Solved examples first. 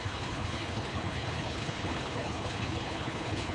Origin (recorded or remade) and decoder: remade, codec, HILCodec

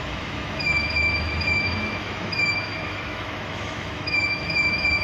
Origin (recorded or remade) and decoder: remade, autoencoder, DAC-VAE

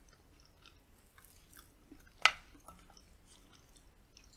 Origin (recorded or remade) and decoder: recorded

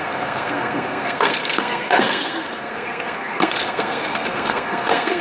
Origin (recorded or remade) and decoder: remade, codec, SNAC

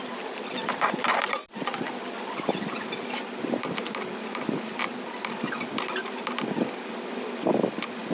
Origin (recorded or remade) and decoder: recorded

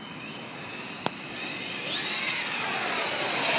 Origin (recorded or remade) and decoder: recorded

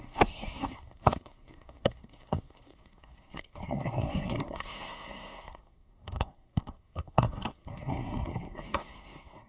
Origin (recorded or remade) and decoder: remade, codec, SNAC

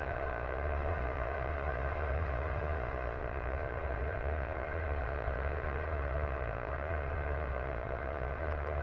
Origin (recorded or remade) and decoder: remade, vocoder, Vocos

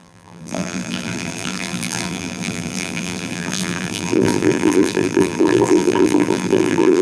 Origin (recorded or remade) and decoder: remade, vocoder, BigVGAN v2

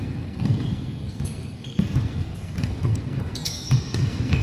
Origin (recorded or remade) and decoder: remade, codec, SNAC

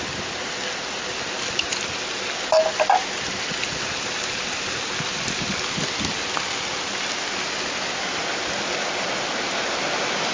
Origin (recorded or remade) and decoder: recorded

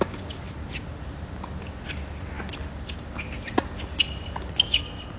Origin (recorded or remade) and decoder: recorded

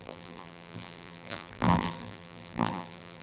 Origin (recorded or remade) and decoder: remade, vocoder, BigVGAN v2